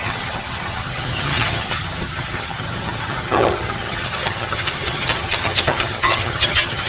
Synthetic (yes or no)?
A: yes